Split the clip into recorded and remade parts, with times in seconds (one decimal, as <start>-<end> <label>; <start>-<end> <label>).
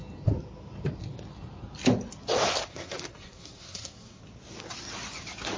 0.0-2.7 recorded; 2.7-4.2 remade; 4.2-5.6 recorded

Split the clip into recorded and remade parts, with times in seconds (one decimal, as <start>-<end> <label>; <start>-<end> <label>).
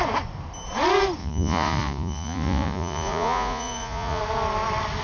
0.0-1.2 recorded; 1.2-4.2 remade; 4.2-5.0 recorded